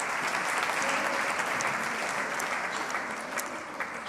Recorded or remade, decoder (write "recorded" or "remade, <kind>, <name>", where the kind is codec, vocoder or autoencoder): recorded